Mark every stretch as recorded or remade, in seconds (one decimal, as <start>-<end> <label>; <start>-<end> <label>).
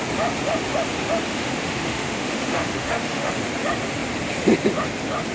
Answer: 0.0-1.3 recorded; 1.3-3.3 remade; 3.3-5.3 recorded